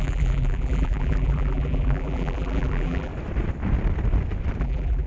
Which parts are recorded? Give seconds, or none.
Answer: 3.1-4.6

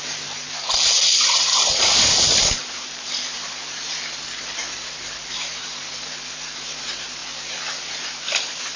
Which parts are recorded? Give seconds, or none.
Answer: 7.2-7.8

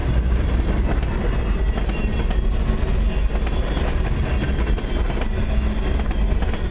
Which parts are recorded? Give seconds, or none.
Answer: 0.0-6.7

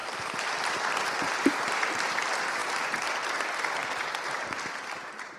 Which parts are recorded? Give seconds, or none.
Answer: 2.6-3.3; 3.8-4.6